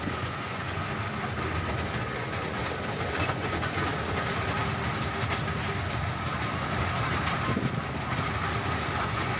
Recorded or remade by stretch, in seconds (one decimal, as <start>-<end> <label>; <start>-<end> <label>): 0.0-0.8 remade; 0.8-2.0 recorded; 2.0-2.6 remade; 2.6-3.2 recorded; 3.2-3.9 remade; 3.9-9.0 recorded; 9.0-9.4 remade